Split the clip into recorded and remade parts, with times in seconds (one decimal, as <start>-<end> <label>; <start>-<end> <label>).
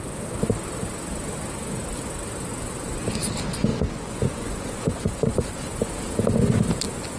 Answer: 0.0-3.7 recorded; 3.7-5.7 remade; 5.7-7.2 recorded